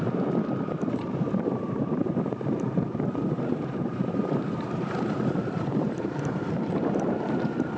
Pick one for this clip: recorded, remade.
remade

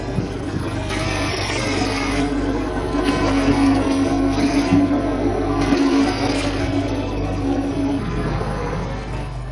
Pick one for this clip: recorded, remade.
remade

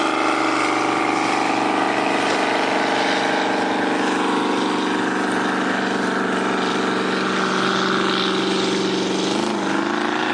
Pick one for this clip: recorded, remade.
recorded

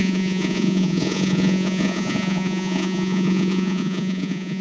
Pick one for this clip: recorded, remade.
remade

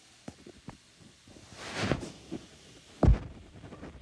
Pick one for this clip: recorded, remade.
remade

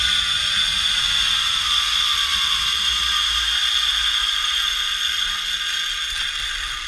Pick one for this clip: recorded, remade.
recorded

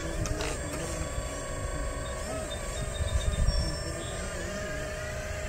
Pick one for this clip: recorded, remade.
recorded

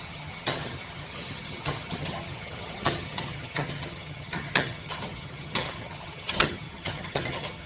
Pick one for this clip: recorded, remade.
remade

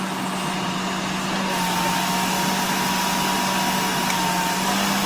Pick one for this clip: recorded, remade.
recorded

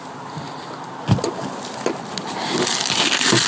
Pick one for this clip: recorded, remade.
remade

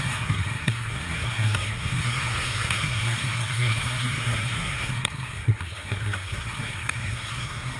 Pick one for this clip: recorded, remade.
remade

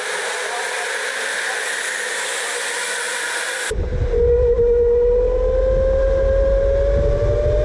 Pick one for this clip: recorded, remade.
recorded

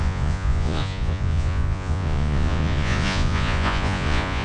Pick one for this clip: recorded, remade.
remade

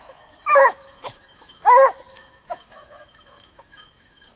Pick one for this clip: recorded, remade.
remade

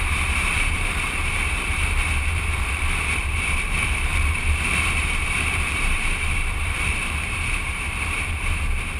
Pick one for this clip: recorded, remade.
remade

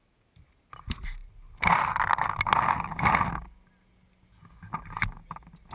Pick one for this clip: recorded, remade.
recorded